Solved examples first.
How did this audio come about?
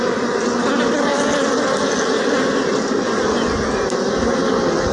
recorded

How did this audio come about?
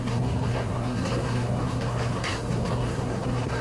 remade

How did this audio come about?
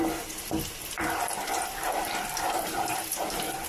remade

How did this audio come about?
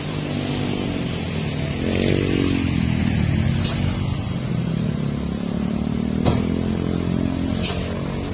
recorded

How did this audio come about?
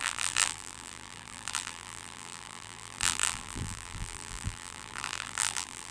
remade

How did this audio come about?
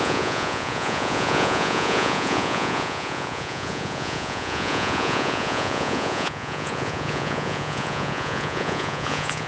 remade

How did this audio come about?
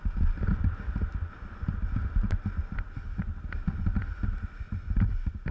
recorded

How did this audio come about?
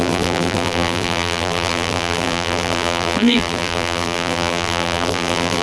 remade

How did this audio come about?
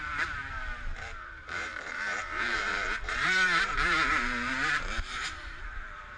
remade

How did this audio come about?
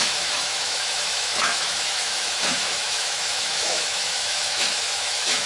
remade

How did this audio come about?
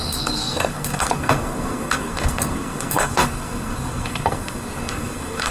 remade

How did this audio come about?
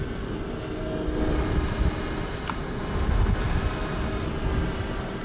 recorded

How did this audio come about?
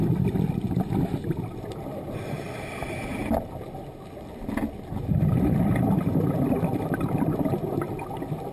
recorded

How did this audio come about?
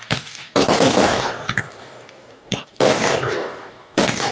remade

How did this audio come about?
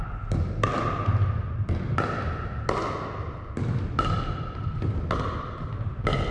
recorded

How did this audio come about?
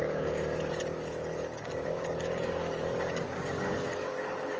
remade